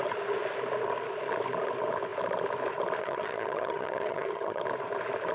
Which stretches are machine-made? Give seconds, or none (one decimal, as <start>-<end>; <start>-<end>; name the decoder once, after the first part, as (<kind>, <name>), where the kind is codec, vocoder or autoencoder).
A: 3.0-4.6 (vocoder, HiFi-GAN)

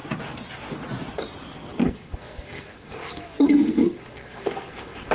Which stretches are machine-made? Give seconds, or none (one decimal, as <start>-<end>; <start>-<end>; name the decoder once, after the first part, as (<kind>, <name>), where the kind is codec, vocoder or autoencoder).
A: 1.8-5.1 (codec, SNAC)

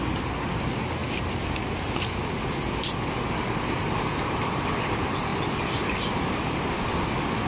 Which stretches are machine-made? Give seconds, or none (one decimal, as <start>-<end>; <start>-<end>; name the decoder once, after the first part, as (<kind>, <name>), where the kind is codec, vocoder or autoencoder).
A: none